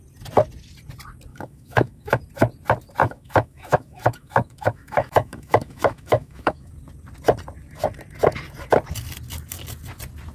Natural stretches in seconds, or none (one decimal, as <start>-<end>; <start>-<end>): 0.0-1.3; 2.2-3.0; 6.7-10.3